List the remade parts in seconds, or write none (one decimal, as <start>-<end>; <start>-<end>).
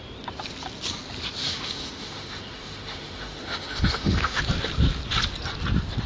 1.4-4.4